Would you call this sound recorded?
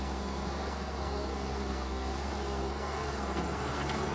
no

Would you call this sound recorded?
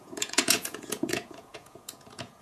no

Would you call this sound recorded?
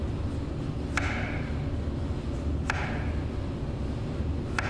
yes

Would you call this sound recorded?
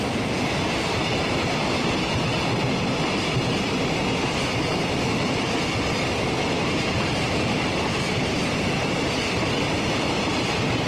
yes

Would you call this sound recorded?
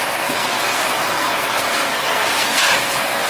no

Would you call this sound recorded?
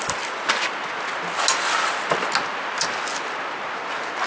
yes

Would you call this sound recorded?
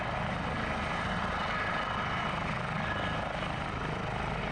yes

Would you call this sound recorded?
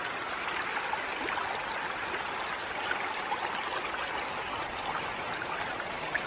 yes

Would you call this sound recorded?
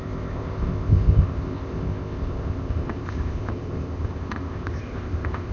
no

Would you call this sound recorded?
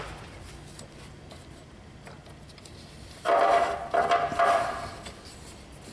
yes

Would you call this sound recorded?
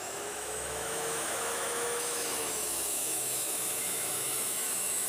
no